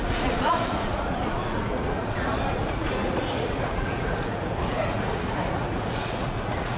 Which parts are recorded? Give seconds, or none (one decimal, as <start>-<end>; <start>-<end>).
none